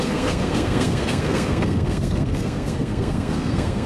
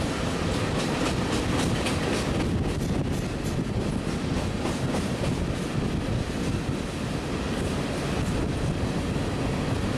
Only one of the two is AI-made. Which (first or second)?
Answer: first